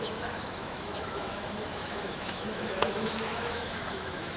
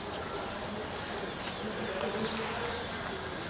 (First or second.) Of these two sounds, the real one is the second